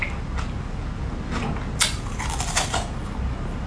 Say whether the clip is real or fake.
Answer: real